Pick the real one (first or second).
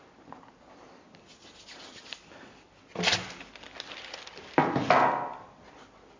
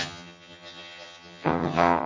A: first